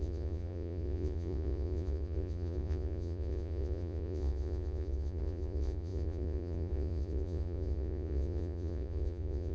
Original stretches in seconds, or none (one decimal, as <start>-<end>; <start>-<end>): none